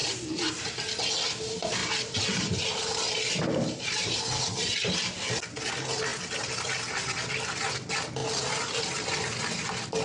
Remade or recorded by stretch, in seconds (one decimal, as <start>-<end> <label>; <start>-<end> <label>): 0.0-0.7 remade; 0.7-1.8 recorded; 1.8-5.3 remade; 5.3-10.0 recorded